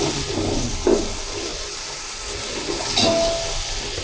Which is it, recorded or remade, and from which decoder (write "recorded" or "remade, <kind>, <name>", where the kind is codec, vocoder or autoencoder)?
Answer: recorded